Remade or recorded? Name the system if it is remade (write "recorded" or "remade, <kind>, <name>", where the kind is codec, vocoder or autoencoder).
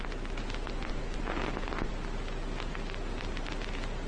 recorded